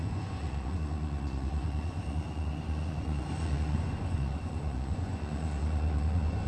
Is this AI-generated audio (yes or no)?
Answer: yes